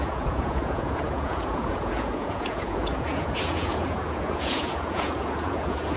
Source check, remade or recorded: remade